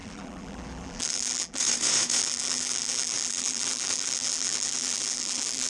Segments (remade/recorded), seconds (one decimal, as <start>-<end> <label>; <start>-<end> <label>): 0.0-1.6 remade; 1.6-2.2 recorded; 2.2-5.7 remade